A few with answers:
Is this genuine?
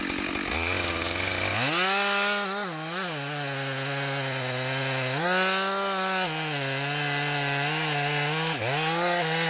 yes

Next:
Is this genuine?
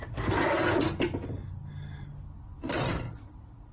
yes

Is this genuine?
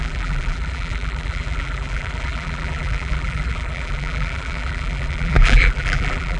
no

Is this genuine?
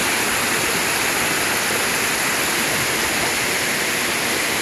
yes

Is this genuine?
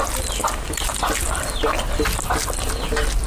yes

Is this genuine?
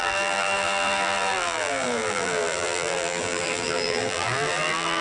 no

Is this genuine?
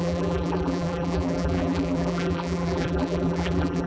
no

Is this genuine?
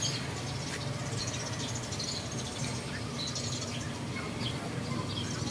yes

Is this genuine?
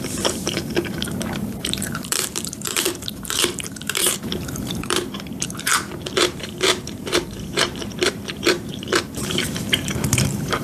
no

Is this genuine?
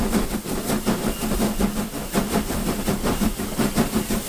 yes